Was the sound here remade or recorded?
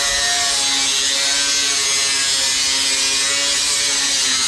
recorded